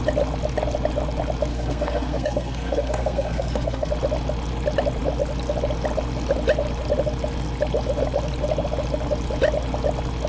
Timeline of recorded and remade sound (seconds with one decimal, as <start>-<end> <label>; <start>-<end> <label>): 0.0-1.5 recorded; 1.5-3.9 remade; 3.9-10.3 recorded